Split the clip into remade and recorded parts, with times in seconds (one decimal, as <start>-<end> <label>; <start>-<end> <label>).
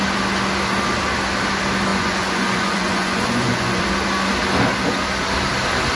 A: 0.0-1.9 recorded; 1.9-3.8 remade; 3.8-6.0 recorded